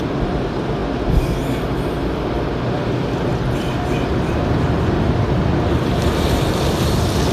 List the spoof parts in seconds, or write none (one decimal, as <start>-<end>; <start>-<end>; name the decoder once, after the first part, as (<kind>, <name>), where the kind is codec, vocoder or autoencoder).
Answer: 0.0-0.8 (vocoder, BigVGAN v2); 2.5-3.3; 5.2-7.3